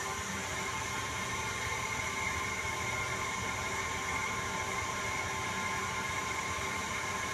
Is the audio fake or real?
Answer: fake